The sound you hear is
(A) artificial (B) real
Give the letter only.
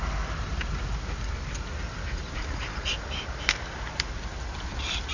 B